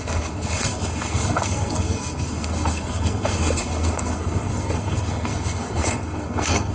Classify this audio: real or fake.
fake